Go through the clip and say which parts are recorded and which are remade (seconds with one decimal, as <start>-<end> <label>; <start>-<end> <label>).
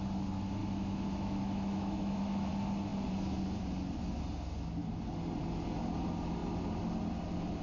0.0-0.6 recorded; 0.6-2.5 remade; 2.5-7.6 recorded